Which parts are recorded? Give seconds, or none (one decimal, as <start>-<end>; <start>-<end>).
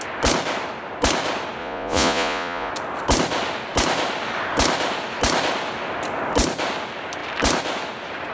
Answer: 0.0-1.6; 2.7-8.3